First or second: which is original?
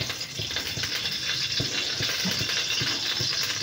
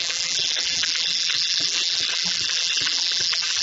first